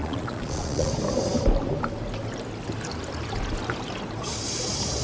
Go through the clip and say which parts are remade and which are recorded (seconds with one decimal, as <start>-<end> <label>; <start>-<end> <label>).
0.0-0.9 remade; 0.9-5.0 recorded